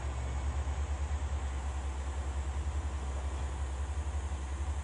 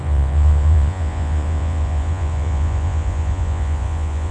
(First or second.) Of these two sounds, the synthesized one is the second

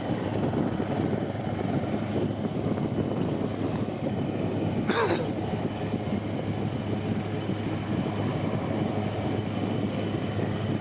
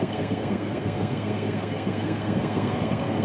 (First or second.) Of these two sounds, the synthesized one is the second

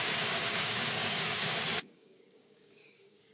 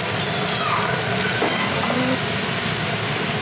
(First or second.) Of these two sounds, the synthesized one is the first